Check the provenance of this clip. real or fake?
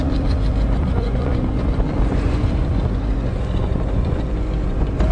fake